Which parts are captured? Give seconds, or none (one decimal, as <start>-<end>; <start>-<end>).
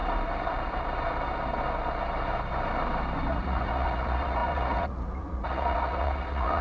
0.0-3.3